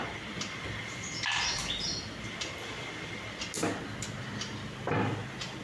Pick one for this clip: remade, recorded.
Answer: recorded